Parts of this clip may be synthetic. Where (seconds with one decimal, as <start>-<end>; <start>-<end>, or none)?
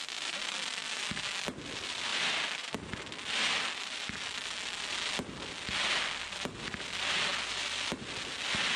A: none